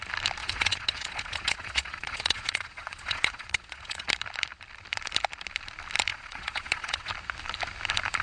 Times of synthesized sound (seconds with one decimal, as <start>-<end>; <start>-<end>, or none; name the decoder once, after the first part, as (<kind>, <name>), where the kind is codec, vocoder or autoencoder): 0.4-4.1 (vocoder, Vocos); 6.1-7.1